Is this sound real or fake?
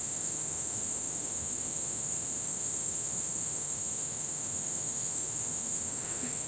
fake